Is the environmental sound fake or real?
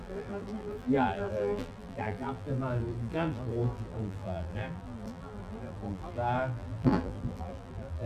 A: fake